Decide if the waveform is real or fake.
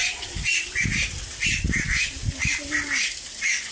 real